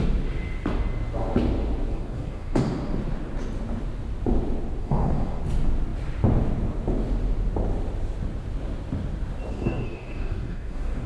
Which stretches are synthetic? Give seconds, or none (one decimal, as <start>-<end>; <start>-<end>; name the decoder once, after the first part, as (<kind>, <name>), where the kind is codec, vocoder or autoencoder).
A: 1.9-2.6 (codec, DAC); 4.8-5.4; 9.5-11.1